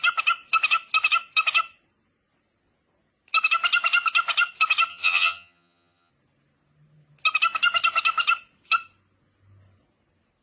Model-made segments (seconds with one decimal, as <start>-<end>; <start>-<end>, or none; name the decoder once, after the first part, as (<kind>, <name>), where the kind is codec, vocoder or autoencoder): 4.9-6.1 (vocoder, HiFi-GAN)